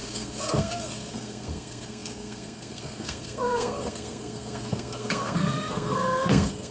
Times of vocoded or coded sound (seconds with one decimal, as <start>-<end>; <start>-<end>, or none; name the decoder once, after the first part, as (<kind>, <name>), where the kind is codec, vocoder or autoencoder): 0.0-6.7 (codec, SNAC)